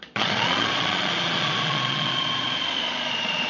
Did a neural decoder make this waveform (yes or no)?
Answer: yes